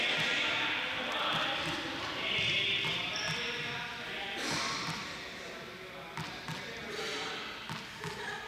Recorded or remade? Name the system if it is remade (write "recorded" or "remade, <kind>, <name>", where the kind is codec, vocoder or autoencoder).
recorded